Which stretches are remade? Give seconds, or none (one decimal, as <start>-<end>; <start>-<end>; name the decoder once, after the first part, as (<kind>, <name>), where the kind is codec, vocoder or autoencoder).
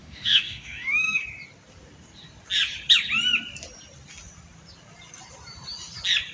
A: 0.0-1.2 (autoencoder, DAC-VAE)